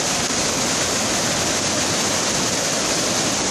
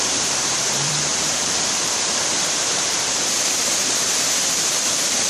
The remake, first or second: second